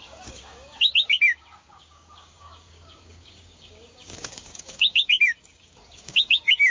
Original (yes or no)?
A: no